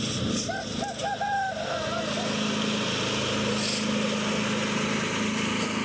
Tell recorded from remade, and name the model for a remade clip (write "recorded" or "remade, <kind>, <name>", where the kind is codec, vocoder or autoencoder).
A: recorded